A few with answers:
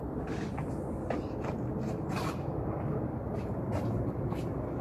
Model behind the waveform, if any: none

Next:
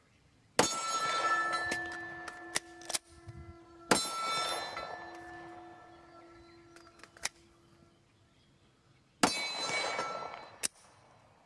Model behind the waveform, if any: none